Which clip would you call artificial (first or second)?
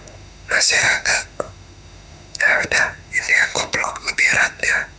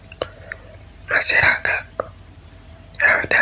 first